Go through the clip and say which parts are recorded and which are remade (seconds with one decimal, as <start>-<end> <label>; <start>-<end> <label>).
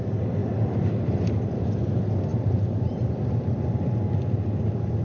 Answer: 0.0-0.4 recorded; 0.4-1.2 remade; 1.2-2.3 recorded; 2.3-3.1 remade; 3.1-5.0 recorded